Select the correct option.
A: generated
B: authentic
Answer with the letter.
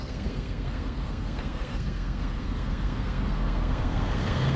A